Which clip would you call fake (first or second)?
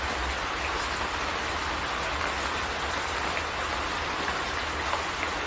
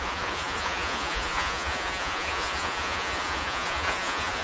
second